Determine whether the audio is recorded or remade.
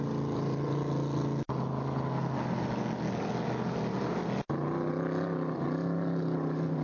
recorded